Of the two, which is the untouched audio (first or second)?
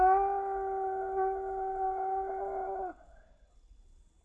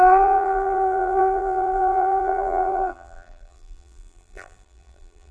first